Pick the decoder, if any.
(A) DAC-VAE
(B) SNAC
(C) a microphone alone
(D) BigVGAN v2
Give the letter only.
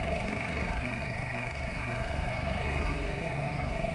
B